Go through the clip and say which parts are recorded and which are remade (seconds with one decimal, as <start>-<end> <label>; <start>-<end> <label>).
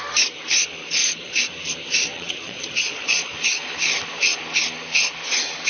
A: 0.0-1.0 recorded; 1.0-1.5 remade; 1.5-2.1 recorded; 2.1-3.3 remade; 3.3-5.7 recorded